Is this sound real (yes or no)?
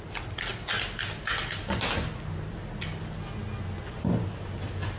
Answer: yes